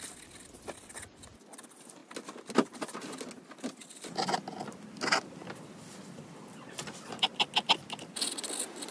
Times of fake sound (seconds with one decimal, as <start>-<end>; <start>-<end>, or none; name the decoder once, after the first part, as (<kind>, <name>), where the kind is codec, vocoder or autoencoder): none